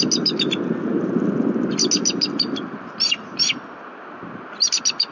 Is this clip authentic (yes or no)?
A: yes